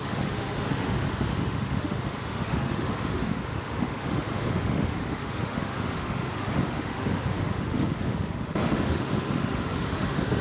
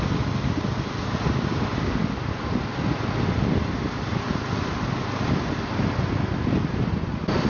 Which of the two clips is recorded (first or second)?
second